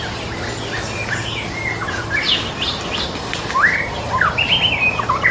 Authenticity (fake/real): real